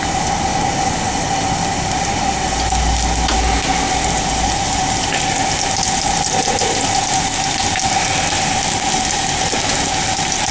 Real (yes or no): yes